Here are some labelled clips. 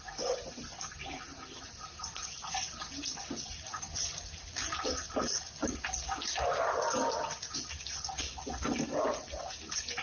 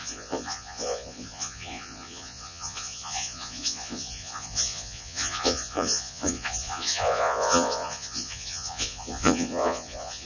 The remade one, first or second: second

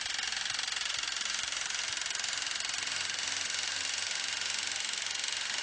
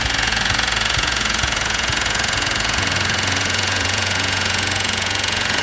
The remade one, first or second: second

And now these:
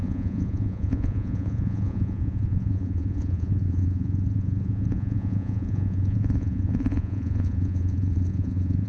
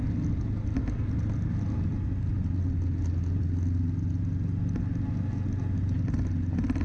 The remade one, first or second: first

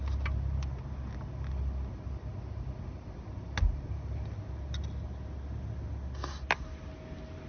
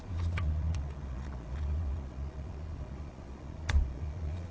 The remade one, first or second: second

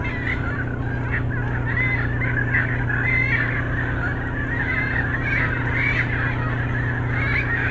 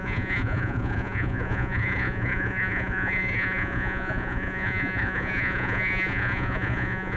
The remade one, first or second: second